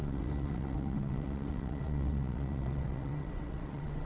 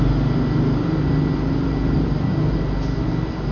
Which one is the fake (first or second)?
first